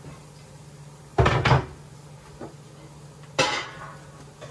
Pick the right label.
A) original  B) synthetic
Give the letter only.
A